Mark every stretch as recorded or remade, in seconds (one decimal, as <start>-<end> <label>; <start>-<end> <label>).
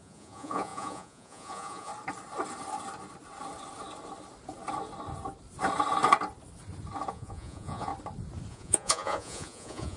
0.0-1.9 remade; 1.9-7.1 recorded; 7.1-7.9 remade; 7.9-8.5 recorded; 8.5-10.0 remade